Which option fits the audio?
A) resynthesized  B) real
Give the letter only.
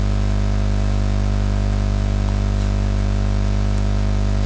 B